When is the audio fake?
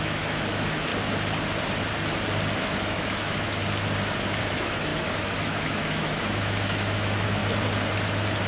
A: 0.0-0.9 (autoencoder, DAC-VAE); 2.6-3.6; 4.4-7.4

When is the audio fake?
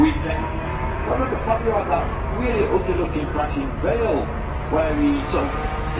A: 0.0-0.7 (codec, DAC); 2.8-3.3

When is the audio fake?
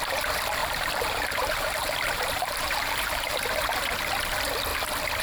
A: 0.6-3.3 (vocoder, BigVGAN v2)